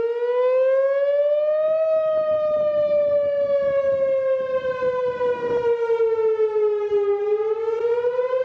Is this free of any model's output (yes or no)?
yes